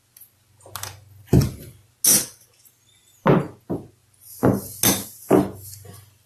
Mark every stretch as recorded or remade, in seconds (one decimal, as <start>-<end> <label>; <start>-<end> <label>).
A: 0.0-6.3 recorded